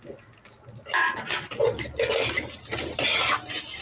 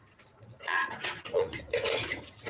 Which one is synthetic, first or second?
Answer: second